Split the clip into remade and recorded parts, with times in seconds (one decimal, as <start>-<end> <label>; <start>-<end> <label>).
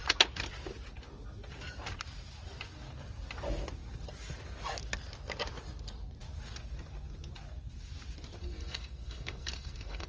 0.0-8.4 recorded; 8.4-10.1 remade